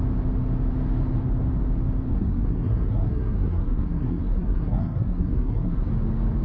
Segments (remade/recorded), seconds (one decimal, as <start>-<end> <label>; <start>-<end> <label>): 0.0-2.1 recorded; 2.1-5.9 remade; 5.9-6.4 recorded